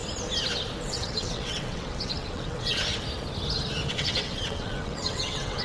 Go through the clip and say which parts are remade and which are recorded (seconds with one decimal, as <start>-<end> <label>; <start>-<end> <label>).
0.0-0.8 recorded; 0.8-2.9 remade; 2.9-3.9 recorded; 3.9-5.6 remade